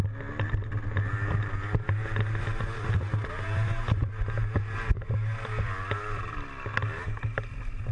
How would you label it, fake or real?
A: real